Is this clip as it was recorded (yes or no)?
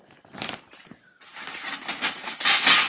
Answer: yes